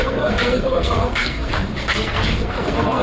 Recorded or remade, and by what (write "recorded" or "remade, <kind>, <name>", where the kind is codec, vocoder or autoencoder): remade, codec, SNAC